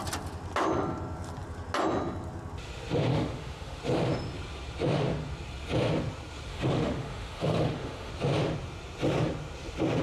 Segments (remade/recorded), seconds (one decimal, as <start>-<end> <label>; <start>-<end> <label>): 0.0-3.1 recorded; 3.1-3.8 remade; 3.8-6.5 recorded; 6.5-8.1 remade; 8.1-10.0 recorded